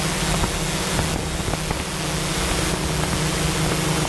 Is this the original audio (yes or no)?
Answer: yes